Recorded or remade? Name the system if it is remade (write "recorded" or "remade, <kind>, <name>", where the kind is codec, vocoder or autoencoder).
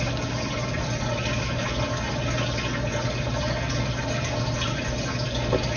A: recorded